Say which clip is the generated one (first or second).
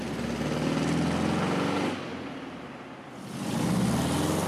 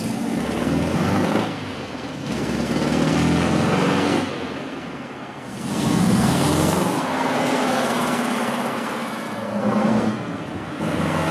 second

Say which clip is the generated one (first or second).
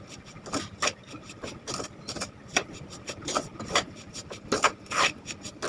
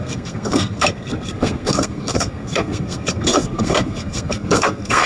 second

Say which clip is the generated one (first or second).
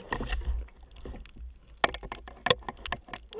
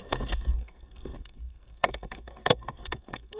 second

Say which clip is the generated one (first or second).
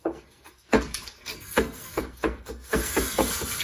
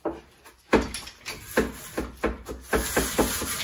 first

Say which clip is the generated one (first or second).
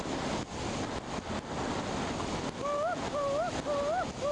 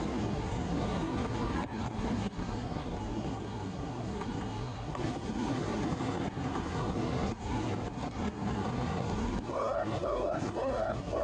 second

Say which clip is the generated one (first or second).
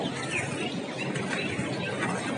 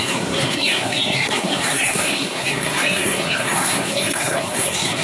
second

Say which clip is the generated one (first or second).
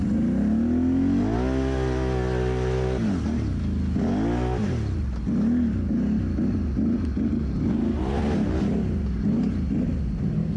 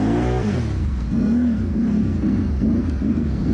second